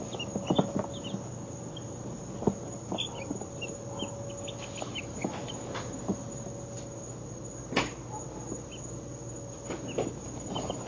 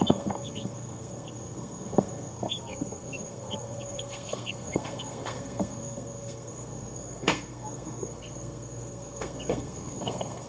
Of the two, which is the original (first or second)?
first